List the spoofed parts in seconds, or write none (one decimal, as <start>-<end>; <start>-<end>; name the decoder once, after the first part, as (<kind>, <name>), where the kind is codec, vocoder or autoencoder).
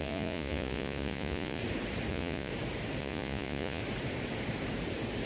0.0-1.6 (vocoder, Vocos); 2.1-2.5; 3.0-3.8